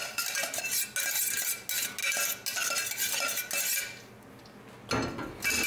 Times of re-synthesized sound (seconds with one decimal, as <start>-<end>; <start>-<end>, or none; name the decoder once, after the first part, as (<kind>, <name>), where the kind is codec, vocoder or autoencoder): 0.0-0.6 (vocoder, BigVGAN v2)